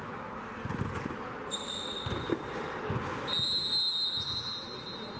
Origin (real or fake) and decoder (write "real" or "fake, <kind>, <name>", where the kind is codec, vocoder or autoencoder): real